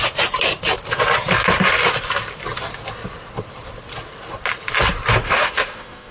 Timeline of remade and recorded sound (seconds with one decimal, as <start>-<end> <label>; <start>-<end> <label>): 0.0-5.2 recorded; 5.2-6.1 remade